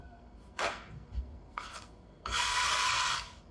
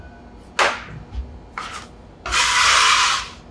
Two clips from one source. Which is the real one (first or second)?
second